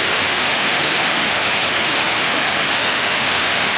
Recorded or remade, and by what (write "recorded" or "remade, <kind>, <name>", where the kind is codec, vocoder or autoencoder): remade, autoencoder, DAC-VAE